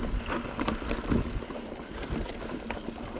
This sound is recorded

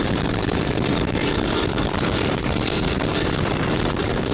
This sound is remade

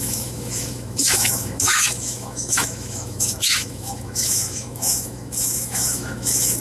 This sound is remade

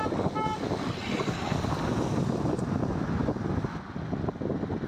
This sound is recorded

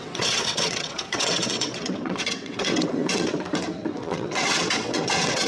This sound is remade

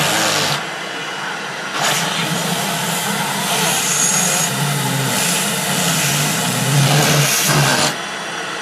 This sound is recorded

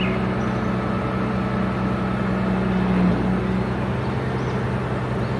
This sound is recorded